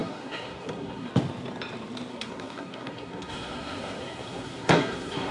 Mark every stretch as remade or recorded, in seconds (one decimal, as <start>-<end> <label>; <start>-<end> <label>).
0.0-1.1 remade; 1.1-2.1 recorded; 2.1-5.3 remade